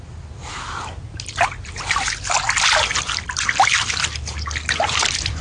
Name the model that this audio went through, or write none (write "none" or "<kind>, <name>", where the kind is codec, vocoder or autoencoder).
none